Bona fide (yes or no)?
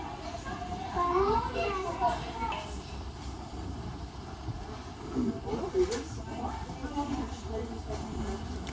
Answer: yes